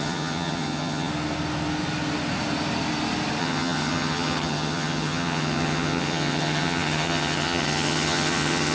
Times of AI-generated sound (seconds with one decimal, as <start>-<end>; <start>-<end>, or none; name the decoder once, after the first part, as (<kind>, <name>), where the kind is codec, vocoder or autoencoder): 0.0-1.1 (vocoder, HiFi-GAN); 3.4-8.7